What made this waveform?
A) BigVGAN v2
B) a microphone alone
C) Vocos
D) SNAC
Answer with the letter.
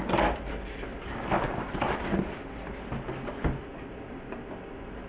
B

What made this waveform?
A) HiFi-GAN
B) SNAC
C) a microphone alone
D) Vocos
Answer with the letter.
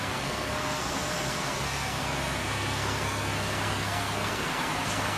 B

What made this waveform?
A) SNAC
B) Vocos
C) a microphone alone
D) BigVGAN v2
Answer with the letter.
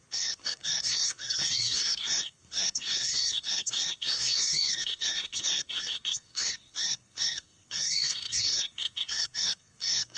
A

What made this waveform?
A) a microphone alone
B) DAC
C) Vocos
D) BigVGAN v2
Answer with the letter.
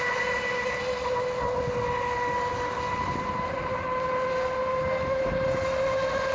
A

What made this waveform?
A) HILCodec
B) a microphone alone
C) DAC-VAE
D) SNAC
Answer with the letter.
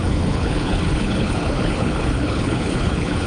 A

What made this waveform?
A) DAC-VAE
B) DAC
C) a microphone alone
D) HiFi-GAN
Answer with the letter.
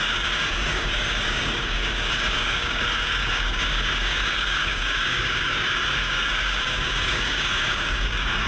B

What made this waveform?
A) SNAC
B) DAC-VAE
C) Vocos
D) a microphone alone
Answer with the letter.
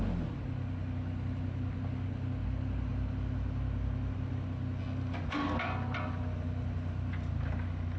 D